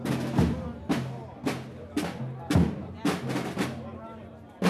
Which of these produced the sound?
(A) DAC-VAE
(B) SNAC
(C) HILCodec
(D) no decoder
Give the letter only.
D